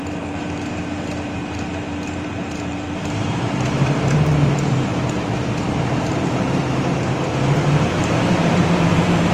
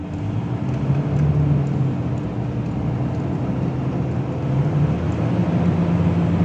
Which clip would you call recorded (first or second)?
second